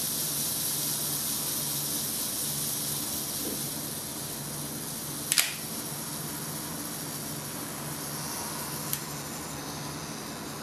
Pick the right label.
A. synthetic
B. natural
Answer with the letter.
B